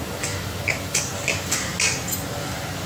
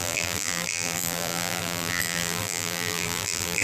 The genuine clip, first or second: first